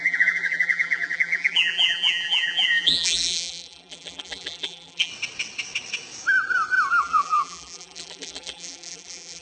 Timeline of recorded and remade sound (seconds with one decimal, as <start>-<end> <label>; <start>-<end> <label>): 0.0-5.1 remade; 5.1-6.9 recorded; 6.9-9.4 remade